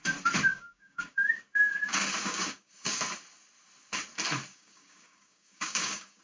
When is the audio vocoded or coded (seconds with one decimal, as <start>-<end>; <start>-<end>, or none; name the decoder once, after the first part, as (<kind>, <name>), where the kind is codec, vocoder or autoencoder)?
0.5-1.4 (codec, DAC); 2.2-3.0; 4.5-6.2